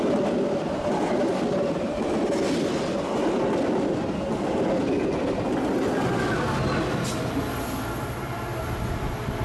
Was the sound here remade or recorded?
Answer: recorded